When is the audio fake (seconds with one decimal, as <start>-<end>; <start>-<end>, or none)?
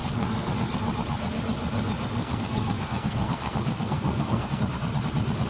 0.0-0.5; 2.2-4.6